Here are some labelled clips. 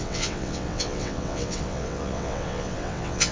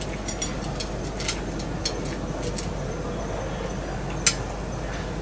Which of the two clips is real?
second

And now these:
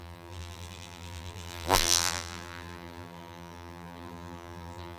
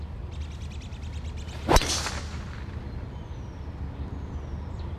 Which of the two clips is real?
second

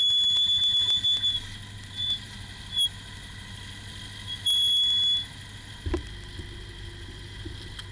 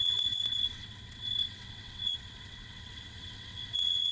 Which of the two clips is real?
first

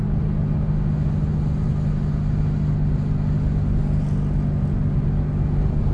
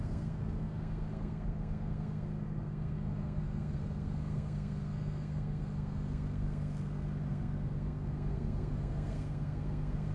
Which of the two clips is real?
first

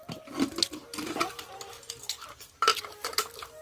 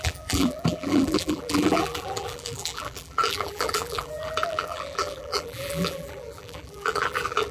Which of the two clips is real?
first